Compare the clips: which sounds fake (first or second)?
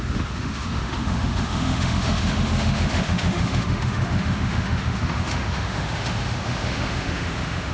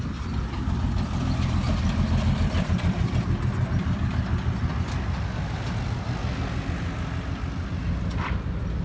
first